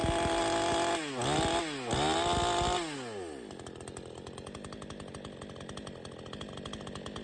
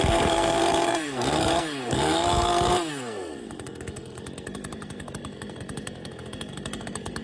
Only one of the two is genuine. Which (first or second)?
first